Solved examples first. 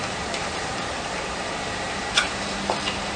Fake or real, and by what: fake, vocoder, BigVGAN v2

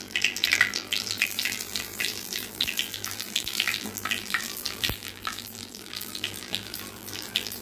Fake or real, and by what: fake, vocoder, BigVGAN v2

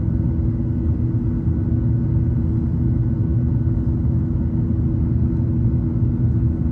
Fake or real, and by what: real